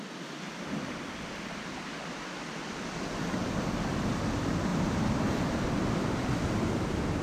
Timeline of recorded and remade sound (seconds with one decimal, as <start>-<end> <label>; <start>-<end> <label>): 0.0-4.7 recorded; 4.7-5.2 remade; 5.2-7.2 recorded